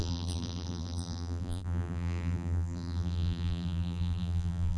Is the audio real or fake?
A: fake